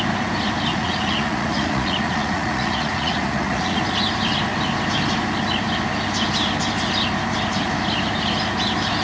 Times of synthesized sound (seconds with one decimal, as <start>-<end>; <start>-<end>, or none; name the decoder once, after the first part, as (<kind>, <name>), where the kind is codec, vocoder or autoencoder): 0.7-3.8 (vocoder, Vocos)